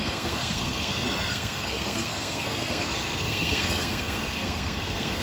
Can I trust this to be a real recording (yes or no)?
no